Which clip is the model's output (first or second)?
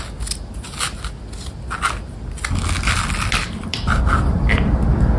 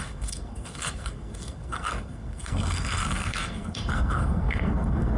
second